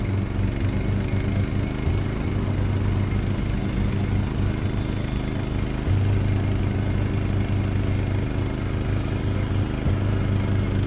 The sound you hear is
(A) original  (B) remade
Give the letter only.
A